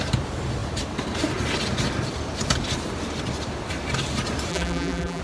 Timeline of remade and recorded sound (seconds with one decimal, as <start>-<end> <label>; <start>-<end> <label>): 0.0-4.5 recorded; 4.5-5.2 remade